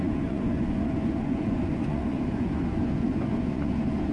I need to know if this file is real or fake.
fake